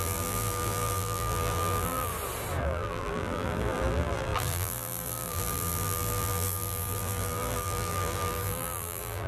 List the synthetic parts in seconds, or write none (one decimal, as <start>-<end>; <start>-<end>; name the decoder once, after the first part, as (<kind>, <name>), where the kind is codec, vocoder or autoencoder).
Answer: 0.0-2.1 (vocoder, BigVGAN v2); 2.6-9.3